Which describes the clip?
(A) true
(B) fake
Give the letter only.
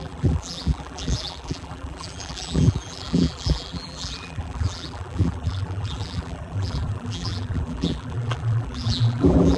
B